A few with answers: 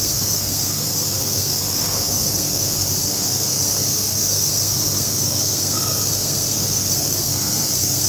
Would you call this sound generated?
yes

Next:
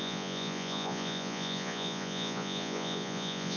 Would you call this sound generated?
yes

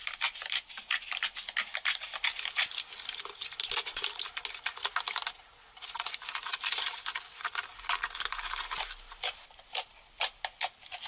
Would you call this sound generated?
no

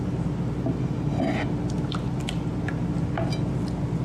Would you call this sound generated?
no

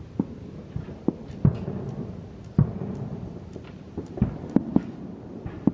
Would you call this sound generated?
no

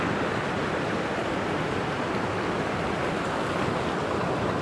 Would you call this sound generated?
no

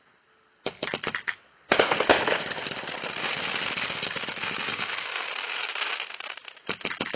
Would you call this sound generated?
no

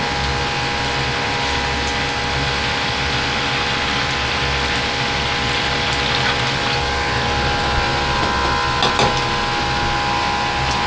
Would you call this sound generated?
no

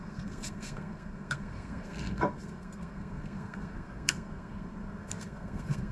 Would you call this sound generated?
yes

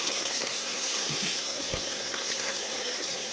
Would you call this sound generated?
yes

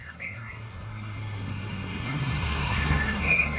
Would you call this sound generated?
yes